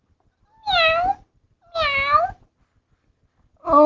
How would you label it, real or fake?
real